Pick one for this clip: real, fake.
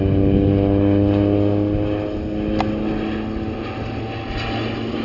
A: real